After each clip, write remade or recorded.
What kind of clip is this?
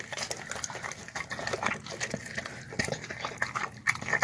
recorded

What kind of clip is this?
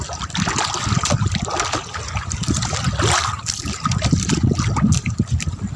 recorded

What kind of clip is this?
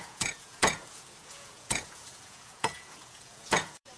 remade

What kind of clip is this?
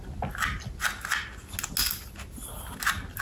recorded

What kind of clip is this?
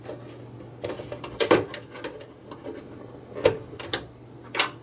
recorded